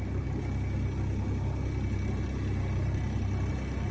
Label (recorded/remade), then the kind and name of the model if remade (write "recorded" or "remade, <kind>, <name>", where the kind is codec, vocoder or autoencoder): recorded